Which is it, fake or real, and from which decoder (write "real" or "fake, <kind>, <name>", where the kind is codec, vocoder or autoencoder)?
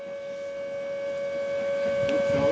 real